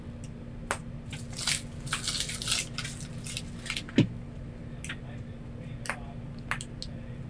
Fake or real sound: real